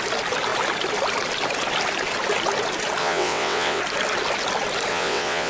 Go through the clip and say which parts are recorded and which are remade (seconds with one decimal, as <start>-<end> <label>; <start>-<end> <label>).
0.0-3.0 recorded; 3.0-3.8 remade; 3.8-4.9 recorded; 4.9-5.5 remade